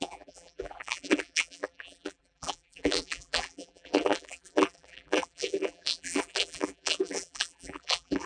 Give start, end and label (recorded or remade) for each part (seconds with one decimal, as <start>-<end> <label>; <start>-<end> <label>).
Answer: 0.0-8.3 remade